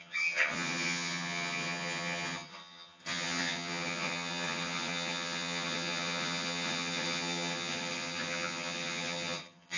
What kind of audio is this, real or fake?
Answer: fake